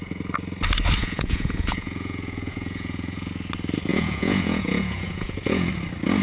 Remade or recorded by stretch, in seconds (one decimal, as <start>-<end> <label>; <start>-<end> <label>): 0.0-1.0 recorded; 1.0-3.3 remade; 3.3-3.9 recorded; 3.9-5.7 remade; 5.7-6.2 recorded